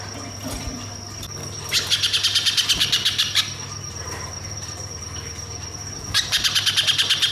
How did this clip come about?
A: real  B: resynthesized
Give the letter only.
A